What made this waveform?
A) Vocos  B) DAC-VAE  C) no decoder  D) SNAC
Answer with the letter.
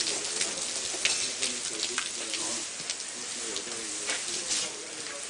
C